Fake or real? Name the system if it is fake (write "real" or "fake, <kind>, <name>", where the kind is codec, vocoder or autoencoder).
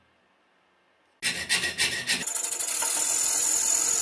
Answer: real